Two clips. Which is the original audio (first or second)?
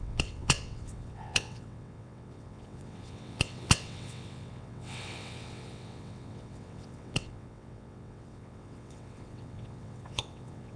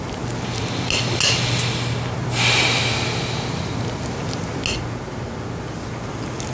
second